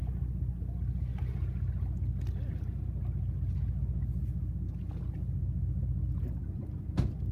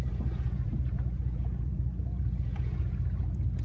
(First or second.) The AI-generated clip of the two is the second